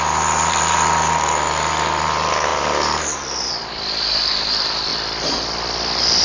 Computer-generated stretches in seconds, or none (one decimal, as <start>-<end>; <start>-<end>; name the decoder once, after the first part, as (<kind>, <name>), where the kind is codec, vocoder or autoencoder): none